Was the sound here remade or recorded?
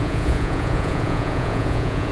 remade